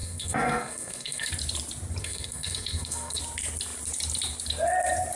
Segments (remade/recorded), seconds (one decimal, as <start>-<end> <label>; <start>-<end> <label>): 0.0-1.3 remade; 1.3-2.0 recorded; 2.0-3.2 remade; 3.2-5.2 recorded